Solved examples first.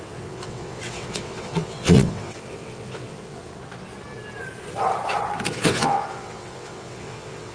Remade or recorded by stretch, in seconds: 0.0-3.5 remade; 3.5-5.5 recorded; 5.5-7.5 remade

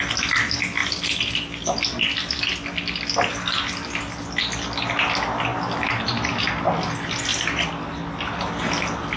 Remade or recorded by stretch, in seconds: 0.0-0.8 recorded; 0.8-2.5 remade; 2.5-5.5 recorded; 5.5-6.4 remade; 6.4-7.3 recorded; 7.3-8.4 remade; 8.4-9.2 recorded

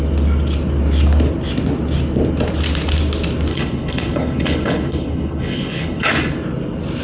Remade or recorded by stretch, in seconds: 0.0-3.5 recorded; 3.5-6.1 remade; 6.1-7.0 recorded

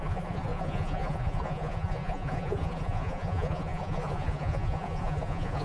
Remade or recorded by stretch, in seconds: 0.0-5.6 remade

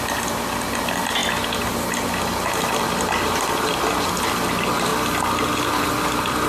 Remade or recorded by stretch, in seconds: 0.0-6.5 recorded